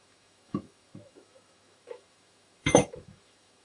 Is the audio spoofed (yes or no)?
yes